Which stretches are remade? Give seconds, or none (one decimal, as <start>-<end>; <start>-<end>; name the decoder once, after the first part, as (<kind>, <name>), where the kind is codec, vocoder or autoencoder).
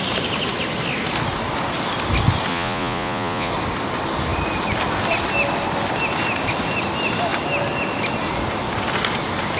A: 2.5-3.5 (vocoder, Vocos)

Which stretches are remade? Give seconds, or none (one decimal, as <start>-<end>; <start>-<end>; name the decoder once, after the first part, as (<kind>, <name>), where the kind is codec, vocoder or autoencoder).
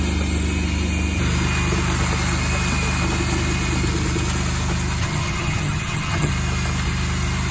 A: 5.0-6.3 (vocoder, HiFi-GAN)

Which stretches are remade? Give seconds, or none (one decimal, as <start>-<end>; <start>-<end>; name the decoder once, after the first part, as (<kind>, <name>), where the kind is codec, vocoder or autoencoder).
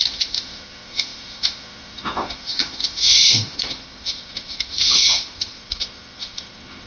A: 0.0-6.9 (autoencoder, DAC-VAE)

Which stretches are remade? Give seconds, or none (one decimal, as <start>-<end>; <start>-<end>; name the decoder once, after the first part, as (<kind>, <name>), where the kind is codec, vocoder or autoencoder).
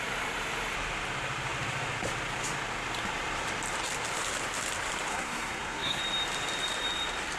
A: 5.1-6.0 (codec, SNAC)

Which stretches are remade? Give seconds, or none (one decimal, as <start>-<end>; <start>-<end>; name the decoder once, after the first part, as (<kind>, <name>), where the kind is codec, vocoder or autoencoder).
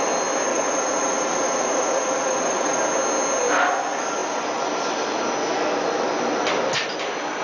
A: 0.5-2.8 (vocoder, Vocos)